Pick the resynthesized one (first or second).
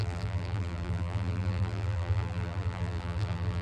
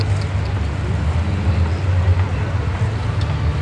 first